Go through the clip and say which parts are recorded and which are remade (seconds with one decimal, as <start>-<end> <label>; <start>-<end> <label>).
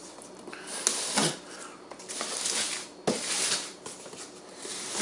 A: 0.0-5.0 recorded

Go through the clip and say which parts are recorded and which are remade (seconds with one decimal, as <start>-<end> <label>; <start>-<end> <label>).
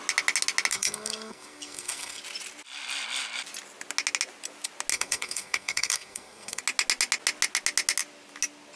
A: 0.0-0.7 recorded; 0.7-2.2 remade; 2.2-4.9 recorded; 4.9-6.6 remade; 6.6-8.8 recorded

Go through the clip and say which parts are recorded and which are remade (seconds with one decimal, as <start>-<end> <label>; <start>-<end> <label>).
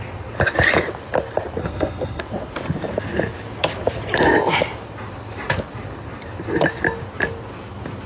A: 0.0-1.6 recorded; 1.6-2.2 remade; 2.2-8.1 recorded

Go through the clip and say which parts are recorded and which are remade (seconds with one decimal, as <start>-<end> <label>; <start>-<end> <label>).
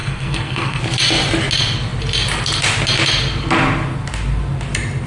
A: 0.0-0.8 remade; 0.8-5.1 recorded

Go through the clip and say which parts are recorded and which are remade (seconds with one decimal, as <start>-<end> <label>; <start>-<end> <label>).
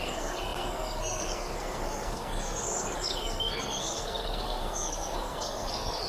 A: 0.0-6.1 remade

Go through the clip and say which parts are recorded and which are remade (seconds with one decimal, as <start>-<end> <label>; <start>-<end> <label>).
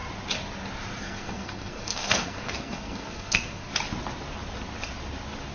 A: 0.0-1.0 recorded; 1.0-3.7 remade; 3.7-5.5 recorded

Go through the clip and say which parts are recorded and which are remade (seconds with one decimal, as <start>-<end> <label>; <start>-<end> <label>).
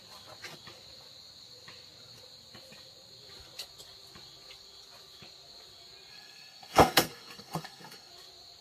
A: 0.0-6.1 recorded; 6.1-8.1 remade; 8.1-8.6 recorded